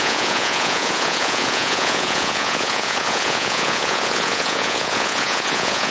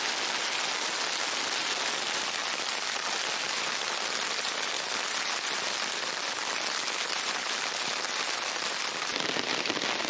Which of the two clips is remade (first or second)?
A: first